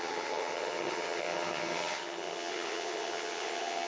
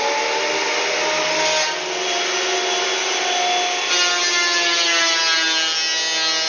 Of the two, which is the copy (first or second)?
first